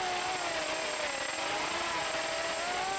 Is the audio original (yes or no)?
yes